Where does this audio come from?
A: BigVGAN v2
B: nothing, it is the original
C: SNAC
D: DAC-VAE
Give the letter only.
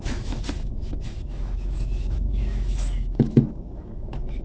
D